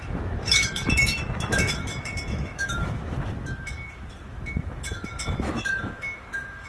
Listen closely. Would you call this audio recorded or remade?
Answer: remade